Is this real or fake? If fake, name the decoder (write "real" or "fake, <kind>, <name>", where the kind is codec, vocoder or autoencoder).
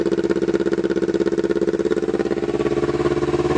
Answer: real